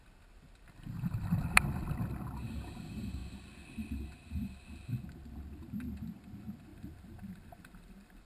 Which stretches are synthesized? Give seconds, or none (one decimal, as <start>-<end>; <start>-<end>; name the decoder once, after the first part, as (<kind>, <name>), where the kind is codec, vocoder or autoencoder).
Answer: 6.7-8.2 (vocoder, BigVGAN v2)